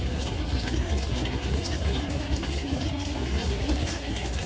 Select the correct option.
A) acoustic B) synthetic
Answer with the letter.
B